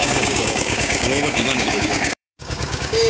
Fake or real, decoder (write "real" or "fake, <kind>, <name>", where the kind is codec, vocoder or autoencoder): fake, codec, DAC